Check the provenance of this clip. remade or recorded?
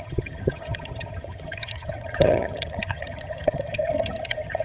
remade